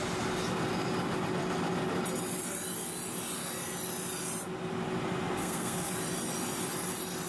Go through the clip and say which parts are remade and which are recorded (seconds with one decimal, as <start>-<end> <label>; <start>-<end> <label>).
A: 0.0-5.4 recorded; 5.4-5.9 remade; 5.9-7.3 recorded